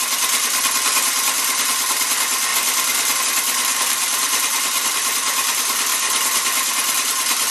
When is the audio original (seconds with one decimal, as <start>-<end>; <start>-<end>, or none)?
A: 0.0-3.7; 4.9-7.5